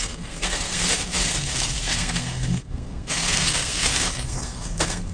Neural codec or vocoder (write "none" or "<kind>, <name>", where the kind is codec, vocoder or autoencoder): codec, SNAC